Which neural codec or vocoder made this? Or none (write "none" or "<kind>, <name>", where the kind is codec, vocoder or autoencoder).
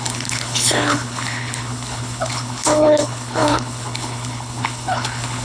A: codec, HILCodec